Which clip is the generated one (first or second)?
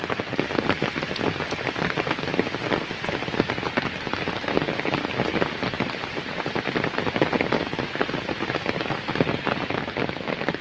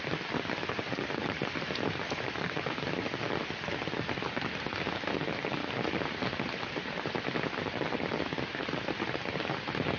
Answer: second